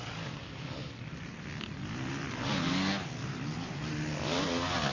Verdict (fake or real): real